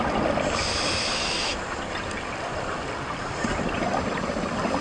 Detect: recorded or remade recorded